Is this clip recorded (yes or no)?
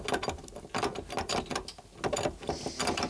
yes